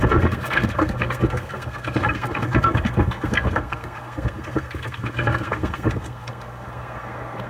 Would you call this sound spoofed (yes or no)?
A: yes